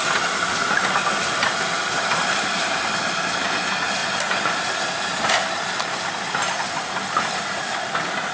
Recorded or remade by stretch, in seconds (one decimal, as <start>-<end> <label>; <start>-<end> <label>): 0.0-8.3 recorded